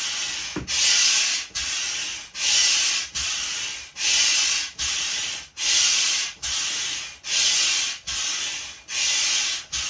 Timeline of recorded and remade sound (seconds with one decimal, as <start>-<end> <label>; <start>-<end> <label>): 0.0-1.6 recorded; 1.6-6.7 remade; 6.7-9.9 recorded

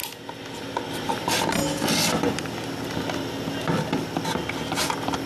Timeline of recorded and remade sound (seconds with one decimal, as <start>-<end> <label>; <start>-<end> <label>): 0.0-0.9 recorded; 0.9-1.6 remade; 1.6-4.8 recorded; 4.8-5.3 remade